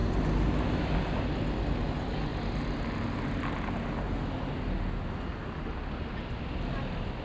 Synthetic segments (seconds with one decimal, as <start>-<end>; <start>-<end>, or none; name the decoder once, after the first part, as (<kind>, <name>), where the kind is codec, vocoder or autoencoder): none

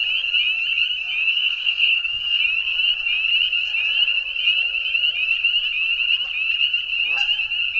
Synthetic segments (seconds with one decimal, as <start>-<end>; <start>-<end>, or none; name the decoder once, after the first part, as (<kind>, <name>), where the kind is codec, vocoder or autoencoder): 1.3-2.4 (codec, SNAC)

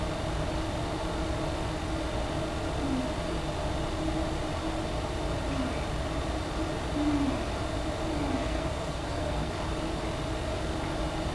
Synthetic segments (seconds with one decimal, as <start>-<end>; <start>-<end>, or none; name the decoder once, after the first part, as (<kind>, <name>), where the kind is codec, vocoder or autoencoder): 8.3-9.5 (codec, SNAC)

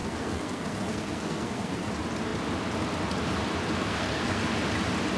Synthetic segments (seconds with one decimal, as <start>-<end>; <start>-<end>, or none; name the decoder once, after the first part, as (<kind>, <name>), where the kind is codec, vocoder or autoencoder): 0.0-1.9 (codec, SNAC); 3.8-4.4

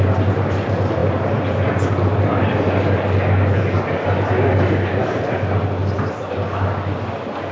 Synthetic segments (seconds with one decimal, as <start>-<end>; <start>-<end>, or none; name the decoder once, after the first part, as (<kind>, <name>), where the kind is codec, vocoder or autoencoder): none